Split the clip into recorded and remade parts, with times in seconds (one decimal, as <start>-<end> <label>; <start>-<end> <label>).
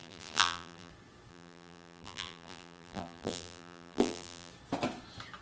0.0-0.9 remade; 0.9-1.3 recorded; 1.3-4.5 remade; 4.5-5.4 recorded